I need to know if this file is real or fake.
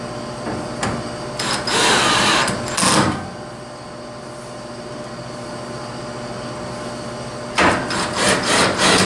real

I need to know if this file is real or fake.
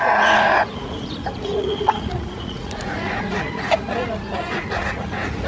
fake